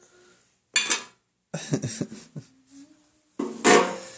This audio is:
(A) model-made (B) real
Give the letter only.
B